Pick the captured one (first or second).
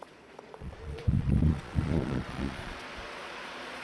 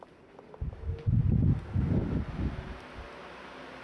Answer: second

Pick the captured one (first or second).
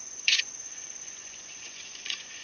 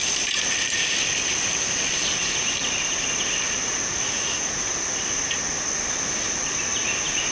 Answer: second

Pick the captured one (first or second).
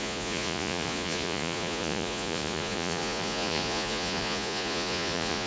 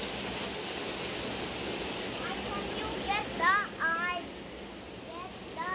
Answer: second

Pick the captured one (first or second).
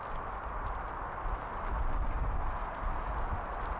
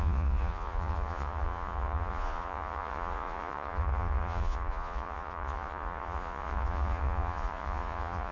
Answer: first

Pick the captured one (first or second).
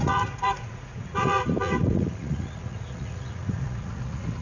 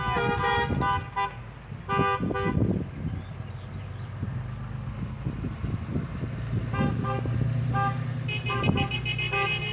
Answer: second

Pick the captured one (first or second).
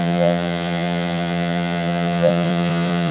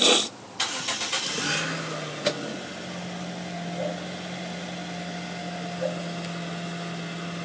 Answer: second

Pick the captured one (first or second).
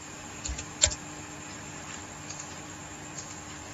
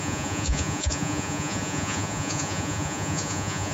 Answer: first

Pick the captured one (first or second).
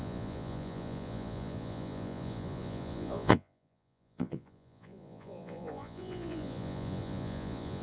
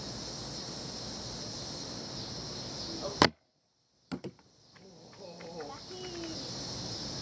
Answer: second